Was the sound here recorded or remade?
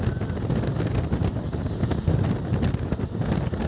recorded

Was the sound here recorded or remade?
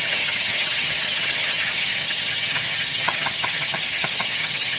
remade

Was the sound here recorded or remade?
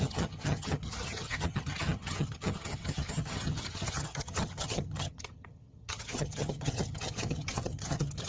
remade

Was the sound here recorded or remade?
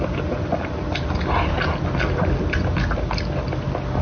recorded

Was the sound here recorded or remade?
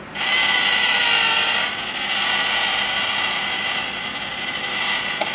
recorded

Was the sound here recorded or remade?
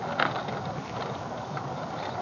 recorded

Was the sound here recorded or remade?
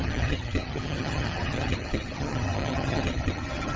remade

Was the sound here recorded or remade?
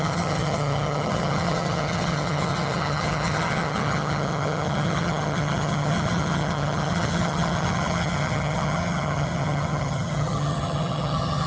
remade